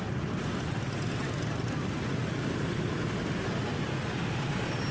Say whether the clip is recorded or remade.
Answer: recorded